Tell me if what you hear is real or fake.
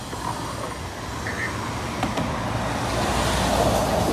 real